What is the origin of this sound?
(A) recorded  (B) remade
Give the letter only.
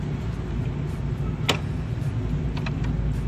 A